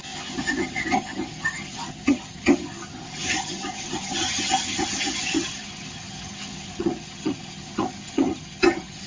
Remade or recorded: remade